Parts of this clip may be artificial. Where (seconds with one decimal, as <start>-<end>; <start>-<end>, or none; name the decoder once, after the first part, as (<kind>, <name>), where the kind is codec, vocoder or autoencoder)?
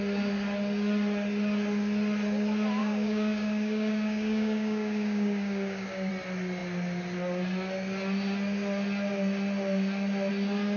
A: 2.8-6.1 (codec, DAC)